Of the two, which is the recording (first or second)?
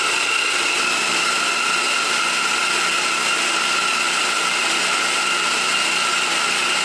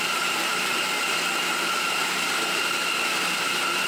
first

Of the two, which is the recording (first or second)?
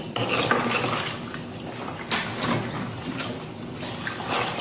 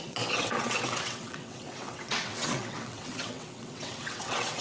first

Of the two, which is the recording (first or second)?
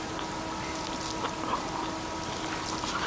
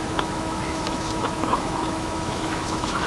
first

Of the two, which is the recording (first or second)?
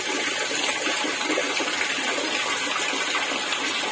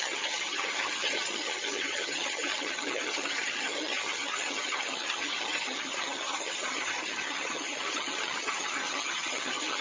first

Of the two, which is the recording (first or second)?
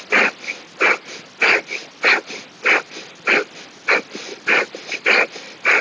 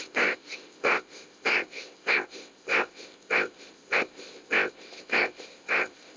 first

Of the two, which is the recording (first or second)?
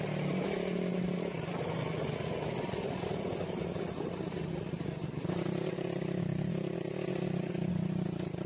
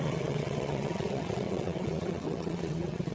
first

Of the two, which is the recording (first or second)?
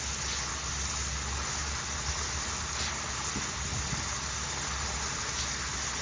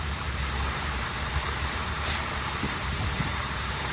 first